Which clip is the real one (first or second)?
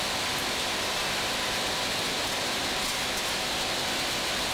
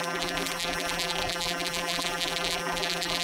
first